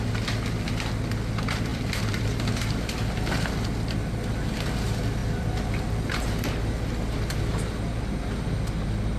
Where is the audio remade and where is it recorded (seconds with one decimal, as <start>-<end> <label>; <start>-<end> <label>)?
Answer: 0.0-1.7 recorded; 1.7-2.5 remade; 2.5-5.2 recorded; 5.2-6.1 remade; 6.1-9.2 recorded